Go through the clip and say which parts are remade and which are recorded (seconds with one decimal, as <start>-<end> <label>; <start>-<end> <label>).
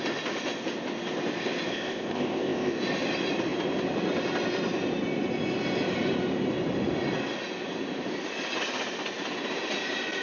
0.0-1.7 recorded; 1.7-2.8 remade; 2.8-10.2 recorded